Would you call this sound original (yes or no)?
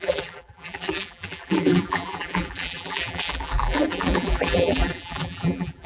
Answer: no